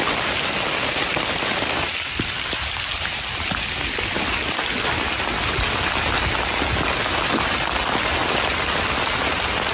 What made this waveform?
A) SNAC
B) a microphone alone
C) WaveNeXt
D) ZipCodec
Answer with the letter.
B